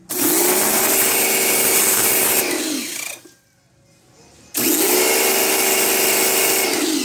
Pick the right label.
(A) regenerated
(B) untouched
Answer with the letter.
B